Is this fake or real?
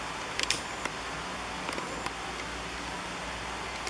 real